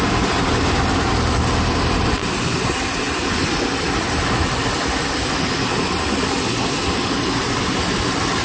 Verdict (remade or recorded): recorded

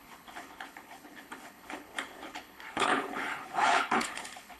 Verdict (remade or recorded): remade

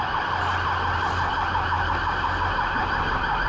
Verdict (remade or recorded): recorded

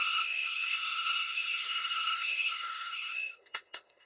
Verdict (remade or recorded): remade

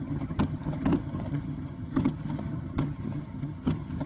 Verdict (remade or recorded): remade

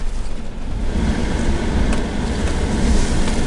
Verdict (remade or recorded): recorded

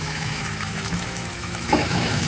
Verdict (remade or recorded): remade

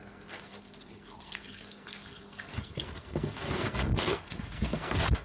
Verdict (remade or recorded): remade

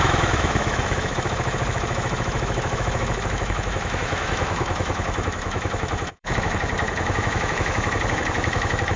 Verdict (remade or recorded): remade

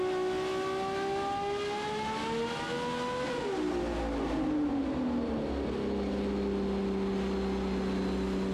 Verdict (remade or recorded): recorded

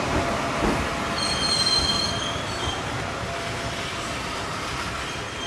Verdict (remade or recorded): recorded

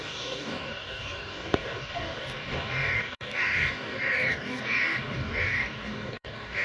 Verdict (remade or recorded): remade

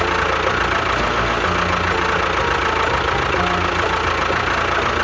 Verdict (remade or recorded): recorded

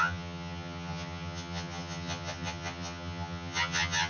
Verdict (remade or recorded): remade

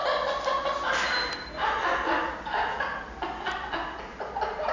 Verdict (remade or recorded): recorded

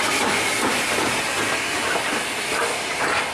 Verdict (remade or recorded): recorded